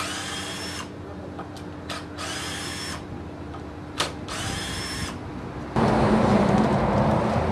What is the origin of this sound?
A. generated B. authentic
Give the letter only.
B